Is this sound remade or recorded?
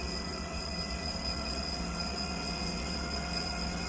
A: remade